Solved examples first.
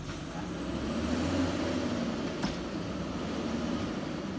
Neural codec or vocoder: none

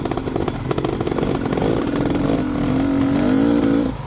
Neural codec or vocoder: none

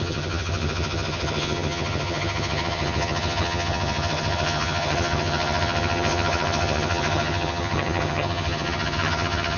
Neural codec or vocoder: vocoder, HiFi-GAN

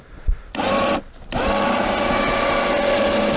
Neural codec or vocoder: none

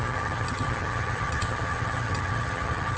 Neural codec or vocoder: vocoder, HiFi-GAN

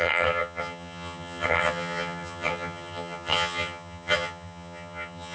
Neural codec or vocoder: vocoder, HiFi-GAN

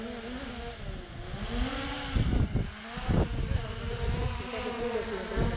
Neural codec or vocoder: none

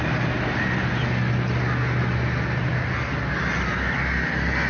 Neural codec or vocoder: none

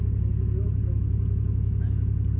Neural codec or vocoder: none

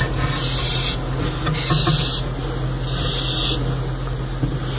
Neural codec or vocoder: none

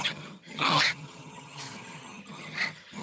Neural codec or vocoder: vocoder, HiFi-GAN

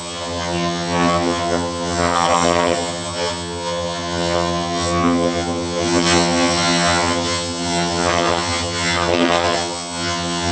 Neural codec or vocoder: vocoder, HiFi-GAN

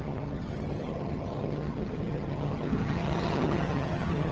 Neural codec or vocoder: vocoder, HiFi-GAN